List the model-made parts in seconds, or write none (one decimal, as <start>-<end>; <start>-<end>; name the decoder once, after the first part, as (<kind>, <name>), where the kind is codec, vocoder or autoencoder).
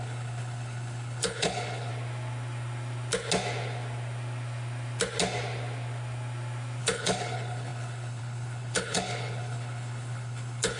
0.0-1.9 (codec, HILCodec); 6.8-10.8